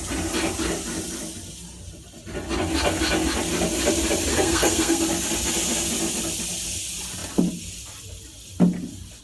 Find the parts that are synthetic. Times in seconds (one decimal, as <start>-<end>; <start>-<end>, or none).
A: 4.3-5.0